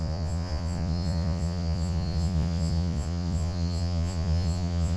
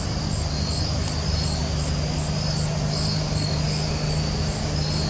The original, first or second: second